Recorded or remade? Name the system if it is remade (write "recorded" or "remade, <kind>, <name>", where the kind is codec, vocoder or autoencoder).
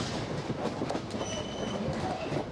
recorded